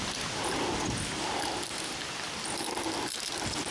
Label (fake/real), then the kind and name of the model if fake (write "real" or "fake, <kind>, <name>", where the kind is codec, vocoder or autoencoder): real